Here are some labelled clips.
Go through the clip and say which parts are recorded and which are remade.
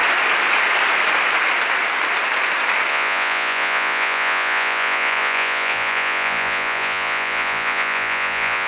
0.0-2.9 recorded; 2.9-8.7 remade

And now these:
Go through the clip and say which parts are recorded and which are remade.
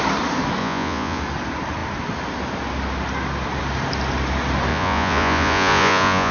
0.0-0.6 recorded; 0.6-1.2 remade; 1.2-4.7 recorded; 4.7-6.3 remade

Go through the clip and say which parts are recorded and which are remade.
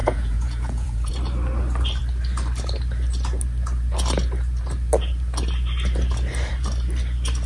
0.0-1.1 remade; 1.1-7.5 recorded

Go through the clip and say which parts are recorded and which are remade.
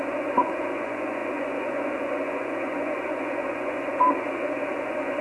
0.0-5.2 remade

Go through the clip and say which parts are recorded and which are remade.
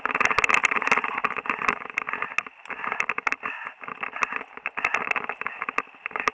0.0-6.3 recorded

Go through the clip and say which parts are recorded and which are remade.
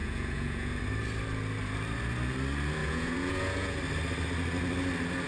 0.0-0.8 remade; 0.8-2.8 recorded; 2.8-3.8 remade; 3.8-5.3 recorded